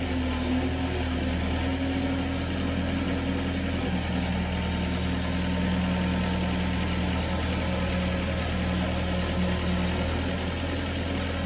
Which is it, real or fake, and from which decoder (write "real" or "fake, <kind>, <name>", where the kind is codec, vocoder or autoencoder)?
real